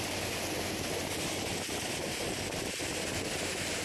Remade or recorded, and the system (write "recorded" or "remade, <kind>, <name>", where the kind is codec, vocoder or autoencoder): recorded